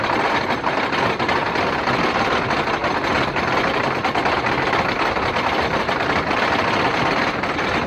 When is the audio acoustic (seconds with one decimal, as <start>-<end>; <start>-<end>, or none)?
2.8-4.4